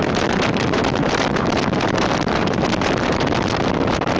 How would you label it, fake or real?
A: fake